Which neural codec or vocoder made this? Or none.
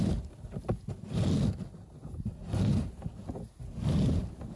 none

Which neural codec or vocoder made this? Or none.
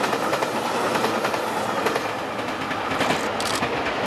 none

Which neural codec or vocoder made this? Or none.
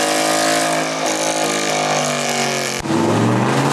none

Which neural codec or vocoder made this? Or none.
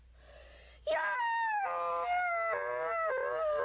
none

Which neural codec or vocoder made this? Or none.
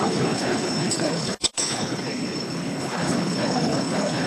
codec, HILCodec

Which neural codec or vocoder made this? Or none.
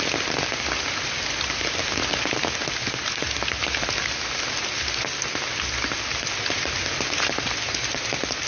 none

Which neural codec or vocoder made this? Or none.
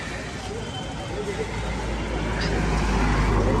none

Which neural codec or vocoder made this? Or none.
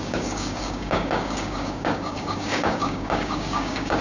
codec, DAC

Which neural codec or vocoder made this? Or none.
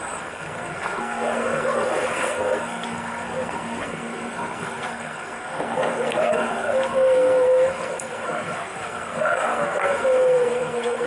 codec, SNAC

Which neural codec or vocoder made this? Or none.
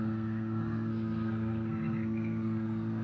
codec, SNAC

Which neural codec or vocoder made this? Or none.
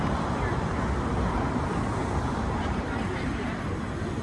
vocoder, BigVGAN v2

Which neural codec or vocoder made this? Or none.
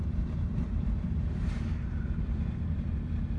vocoder, BigVGAN v2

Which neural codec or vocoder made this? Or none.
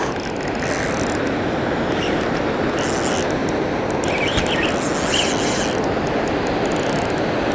none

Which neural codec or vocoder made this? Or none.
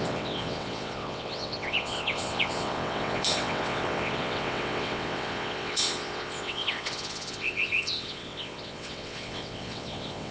vocoder, WaveNeXt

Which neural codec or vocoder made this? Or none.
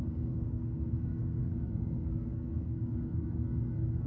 codec, SNAC